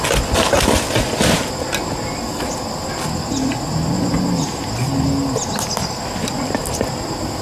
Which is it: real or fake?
real